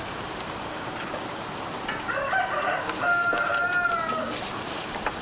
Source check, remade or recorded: recorded